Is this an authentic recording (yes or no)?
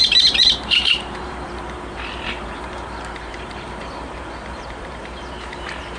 no